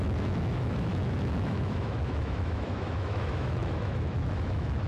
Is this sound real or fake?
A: fake